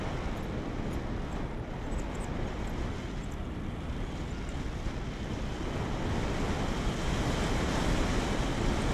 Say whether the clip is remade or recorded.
recorded